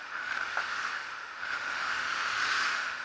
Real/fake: fake